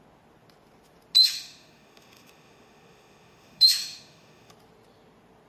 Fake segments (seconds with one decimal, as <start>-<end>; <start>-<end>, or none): 1.2-4.5